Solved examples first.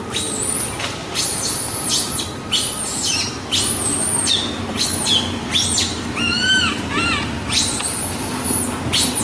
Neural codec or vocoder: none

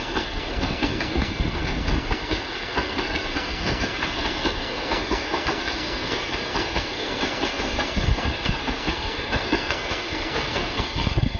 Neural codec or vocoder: codec, SNAC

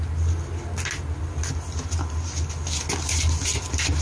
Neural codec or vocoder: none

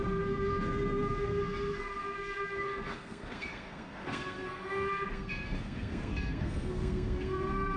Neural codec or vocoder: codec, SNAC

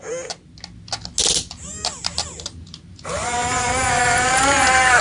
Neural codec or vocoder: none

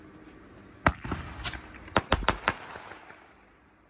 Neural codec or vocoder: none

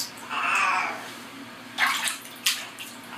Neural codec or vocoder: none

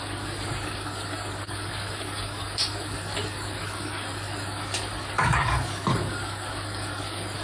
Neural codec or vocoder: codec, DAC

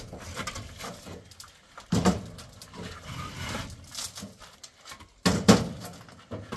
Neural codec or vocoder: none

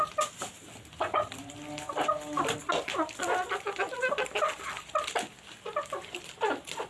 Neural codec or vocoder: none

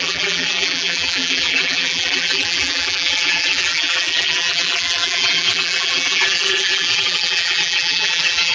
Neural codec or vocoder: vocoder, BigVGAN v2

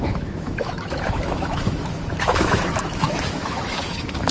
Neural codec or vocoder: autoencoder, DAC-VAE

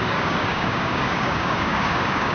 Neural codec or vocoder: codec, DAC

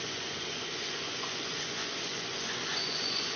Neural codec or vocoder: vocoder, Vocos